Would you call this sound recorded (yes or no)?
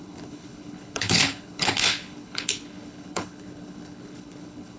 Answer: no